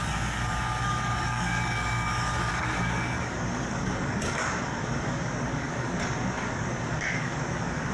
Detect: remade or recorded remade